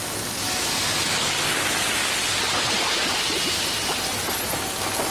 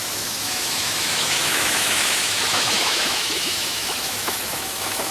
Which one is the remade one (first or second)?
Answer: second